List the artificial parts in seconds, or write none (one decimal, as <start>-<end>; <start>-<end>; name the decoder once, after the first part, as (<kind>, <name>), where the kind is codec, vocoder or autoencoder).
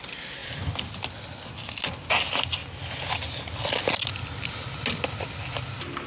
0.0-0.4 (vocoder, BigVGAN v2); 2.2-2.6; 5.5-6.1